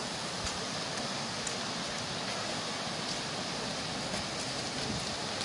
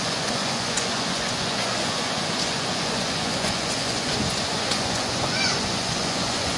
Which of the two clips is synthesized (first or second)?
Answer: second